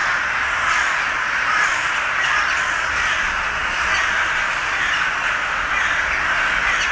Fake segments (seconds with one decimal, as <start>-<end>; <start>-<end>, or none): none